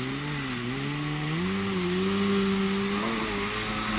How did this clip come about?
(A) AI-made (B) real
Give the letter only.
B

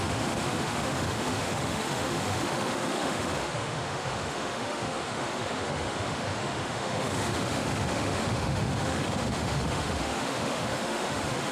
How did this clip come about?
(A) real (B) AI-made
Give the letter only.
B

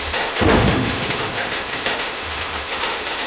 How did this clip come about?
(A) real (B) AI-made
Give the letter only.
B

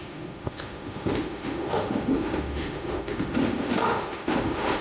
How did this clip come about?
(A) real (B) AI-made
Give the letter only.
B